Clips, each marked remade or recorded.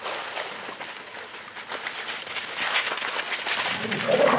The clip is recorded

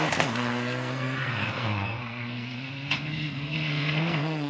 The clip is remade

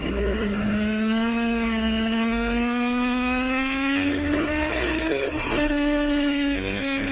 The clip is remade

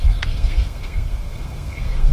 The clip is remade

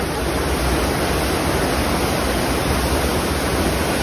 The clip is recorded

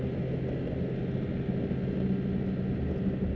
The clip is recorded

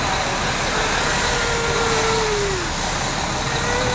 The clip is recorded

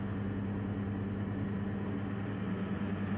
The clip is recorded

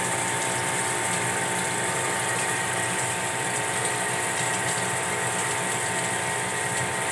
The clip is recorded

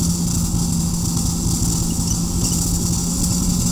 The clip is recorded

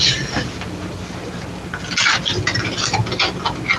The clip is recorded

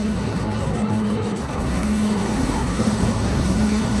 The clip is remade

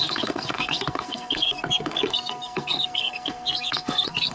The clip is remade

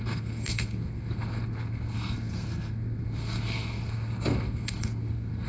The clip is remade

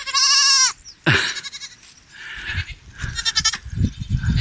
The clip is recorded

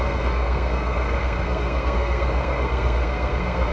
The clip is remade